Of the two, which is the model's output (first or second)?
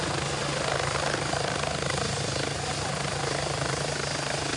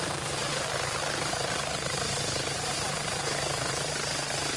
second